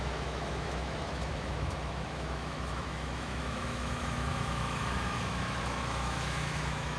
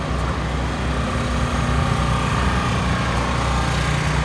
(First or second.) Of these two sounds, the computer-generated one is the first